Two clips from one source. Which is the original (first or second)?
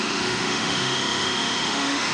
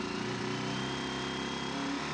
second